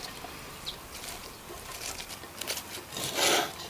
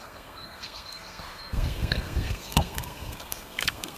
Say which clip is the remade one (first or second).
second